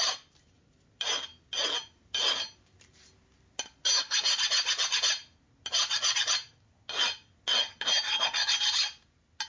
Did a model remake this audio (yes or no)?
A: no